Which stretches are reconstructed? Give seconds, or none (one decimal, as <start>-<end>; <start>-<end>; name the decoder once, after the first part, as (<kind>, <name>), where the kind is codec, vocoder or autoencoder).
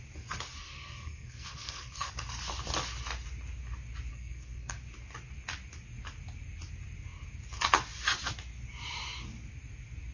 0.6-2.1 (codec, SNAC); 4.1-4.8